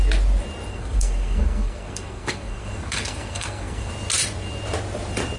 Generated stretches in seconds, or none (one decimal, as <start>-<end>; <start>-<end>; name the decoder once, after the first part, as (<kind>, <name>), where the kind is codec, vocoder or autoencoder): 0.7-3.9 (codec, SNAC)